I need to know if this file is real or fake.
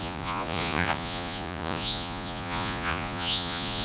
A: fake